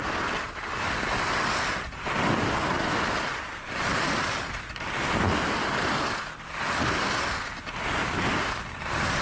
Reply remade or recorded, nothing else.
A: recorded